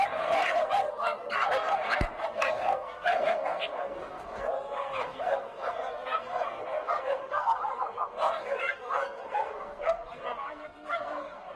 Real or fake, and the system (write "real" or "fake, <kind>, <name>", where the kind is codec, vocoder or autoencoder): fake, codec, SNAC